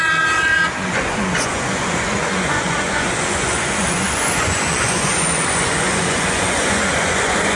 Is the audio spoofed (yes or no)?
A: yes